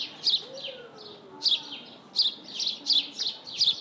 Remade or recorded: recorded